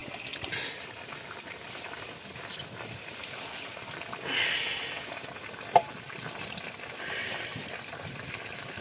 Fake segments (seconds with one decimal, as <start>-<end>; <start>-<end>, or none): none